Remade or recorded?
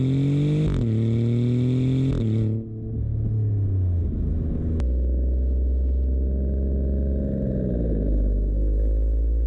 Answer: recorded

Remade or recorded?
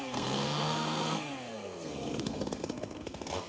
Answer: remade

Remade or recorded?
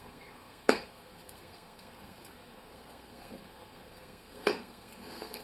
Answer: remade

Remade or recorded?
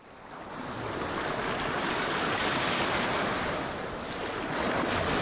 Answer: recorded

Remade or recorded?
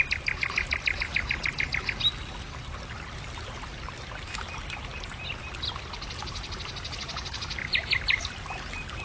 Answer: recorded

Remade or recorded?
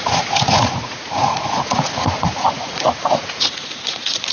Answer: remade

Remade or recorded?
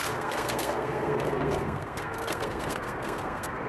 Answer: remade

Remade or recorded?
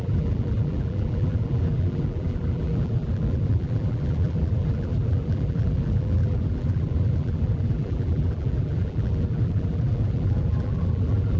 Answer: remade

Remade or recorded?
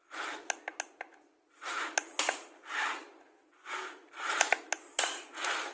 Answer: recorded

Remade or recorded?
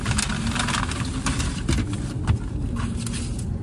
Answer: recorded